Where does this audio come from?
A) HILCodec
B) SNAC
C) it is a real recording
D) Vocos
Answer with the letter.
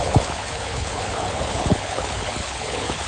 A